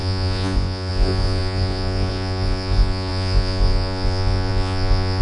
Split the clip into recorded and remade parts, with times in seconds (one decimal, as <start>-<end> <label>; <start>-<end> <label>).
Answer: 0.0-5.2 remade